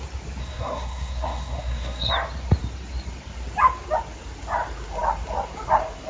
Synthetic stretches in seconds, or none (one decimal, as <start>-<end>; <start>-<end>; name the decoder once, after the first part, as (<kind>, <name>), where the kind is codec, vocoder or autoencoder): 0.4-2.1 (codec, SNAC)